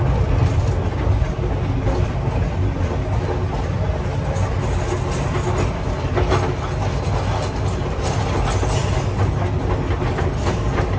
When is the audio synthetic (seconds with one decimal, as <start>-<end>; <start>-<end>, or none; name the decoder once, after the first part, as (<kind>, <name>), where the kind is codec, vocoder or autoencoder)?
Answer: none